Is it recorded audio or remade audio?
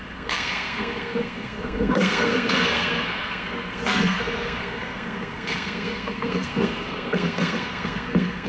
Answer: remade